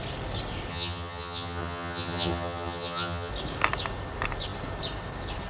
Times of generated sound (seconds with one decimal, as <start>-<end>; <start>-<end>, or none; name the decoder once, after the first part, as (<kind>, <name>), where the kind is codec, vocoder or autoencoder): 0.7-3.3 (vocoder, HiFi-GAN)

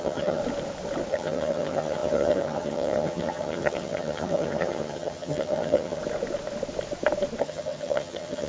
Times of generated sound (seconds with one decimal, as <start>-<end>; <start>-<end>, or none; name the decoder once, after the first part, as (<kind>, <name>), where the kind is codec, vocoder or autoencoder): 0.0-0.4 (vocoder, HiFi-GAN); 1.1-6.0; 7.4-8.5

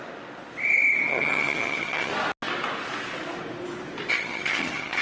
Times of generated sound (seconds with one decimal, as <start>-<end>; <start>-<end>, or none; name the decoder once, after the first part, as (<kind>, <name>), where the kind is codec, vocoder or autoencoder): 1.1-2.1 (vocoder, HiFi-GAN); 4.1-5.0

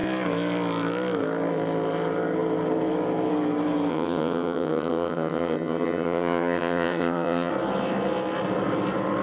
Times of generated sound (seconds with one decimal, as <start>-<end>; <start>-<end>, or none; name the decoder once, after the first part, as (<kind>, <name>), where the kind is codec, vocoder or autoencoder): 3.9-7.5 (vocoder, HiFi-GAN)

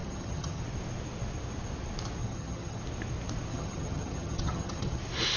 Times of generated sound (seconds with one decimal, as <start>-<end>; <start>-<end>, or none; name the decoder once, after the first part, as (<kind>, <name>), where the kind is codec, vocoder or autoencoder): 0.0-0.6 (vocoder, HiFi-GAN); 2.2-2.8; 3.5-5.0

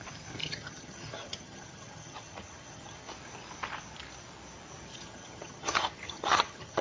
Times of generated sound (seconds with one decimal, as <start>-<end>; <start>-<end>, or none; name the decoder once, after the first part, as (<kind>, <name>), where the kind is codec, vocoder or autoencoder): 0.4-3.1 (vocoder, HiFi-GAN); 4.9-6.8